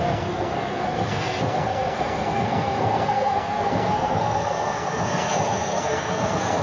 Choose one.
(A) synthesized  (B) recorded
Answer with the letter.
A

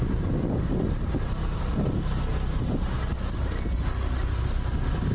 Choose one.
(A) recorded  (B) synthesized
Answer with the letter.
A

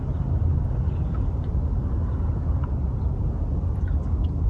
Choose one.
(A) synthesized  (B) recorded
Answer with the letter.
B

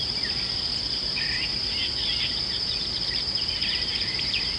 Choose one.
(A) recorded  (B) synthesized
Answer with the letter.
B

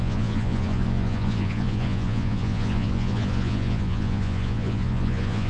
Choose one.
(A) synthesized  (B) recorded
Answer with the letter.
A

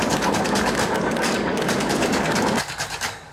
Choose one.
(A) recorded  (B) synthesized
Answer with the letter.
B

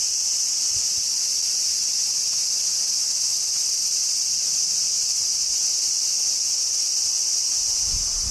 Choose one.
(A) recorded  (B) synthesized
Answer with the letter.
A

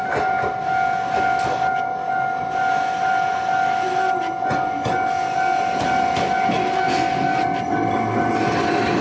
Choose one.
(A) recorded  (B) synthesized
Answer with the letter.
A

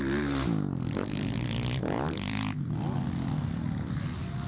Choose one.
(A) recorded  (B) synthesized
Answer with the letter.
A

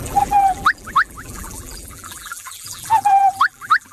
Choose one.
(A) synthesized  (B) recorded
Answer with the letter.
A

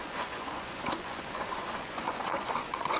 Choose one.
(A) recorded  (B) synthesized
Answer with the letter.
B